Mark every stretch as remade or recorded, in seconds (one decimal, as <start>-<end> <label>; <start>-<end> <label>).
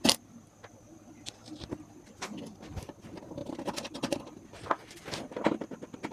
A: 0.0-3.4 recorded; 3.4-6.1 remade